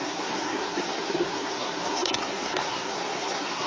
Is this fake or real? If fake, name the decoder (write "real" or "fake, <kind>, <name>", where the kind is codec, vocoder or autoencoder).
fake, codec, SNAC